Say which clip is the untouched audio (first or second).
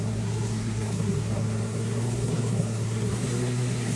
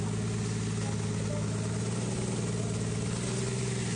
second